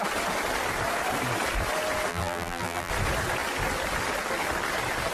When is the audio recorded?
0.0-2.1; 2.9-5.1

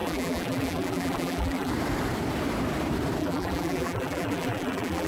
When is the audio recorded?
1.7-3.2